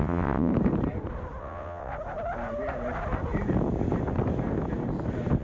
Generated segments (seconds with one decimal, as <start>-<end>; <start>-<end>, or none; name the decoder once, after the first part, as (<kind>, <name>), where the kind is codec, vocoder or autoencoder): 0.0-0.5 (vocoder, WaveNeXt); 1.4-1.9